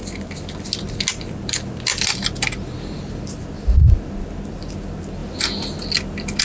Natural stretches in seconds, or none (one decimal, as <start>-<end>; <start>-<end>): 0.0-6.4